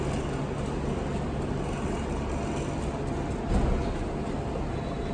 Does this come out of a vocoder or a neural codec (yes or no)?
no